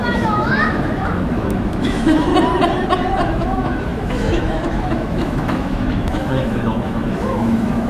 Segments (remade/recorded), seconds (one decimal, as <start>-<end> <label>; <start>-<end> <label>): 0.0-2.3 remade; 2.3-3.3 recorded; 3.3-7.9 remade